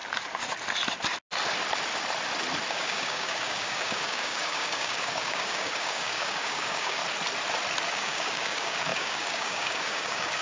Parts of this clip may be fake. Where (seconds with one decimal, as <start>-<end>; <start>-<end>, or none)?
2.7-7.0; 7.9-10.4